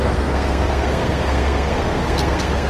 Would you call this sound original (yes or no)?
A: no